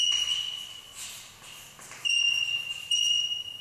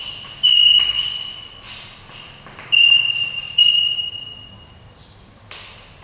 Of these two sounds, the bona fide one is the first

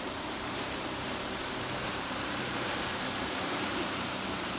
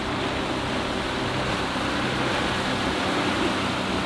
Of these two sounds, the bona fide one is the second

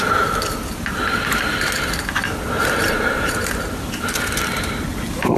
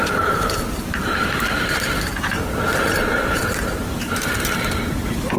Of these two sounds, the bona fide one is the first